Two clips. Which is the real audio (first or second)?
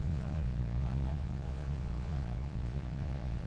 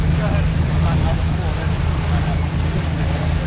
second